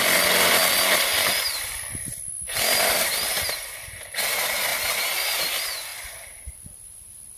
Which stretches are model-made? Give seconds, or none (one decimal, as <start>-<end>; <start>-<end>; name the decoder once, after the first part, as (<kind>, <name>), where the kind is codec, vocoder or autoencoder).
1.1-2.8 (vocoder, BigVGAN v2); 5.9-7.4